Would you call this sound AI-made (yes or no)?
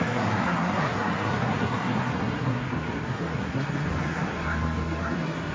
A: yes